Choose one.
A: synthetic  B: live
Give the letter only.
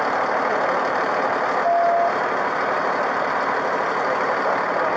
B